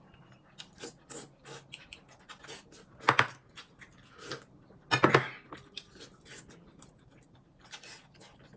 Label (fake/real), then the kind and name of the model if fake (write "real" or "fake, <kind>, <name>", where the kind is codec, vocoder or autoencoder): real